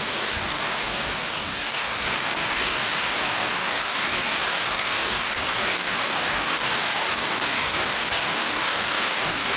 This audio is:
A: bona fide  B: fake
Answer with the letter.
B